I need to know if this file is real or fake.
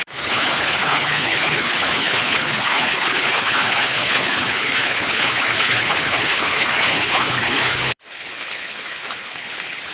fake